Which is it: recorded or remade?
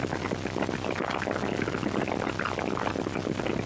recorded